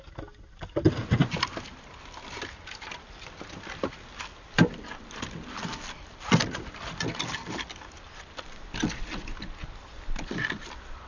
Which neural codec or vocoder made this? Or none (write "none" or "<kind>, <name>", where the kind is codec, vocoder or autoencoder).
none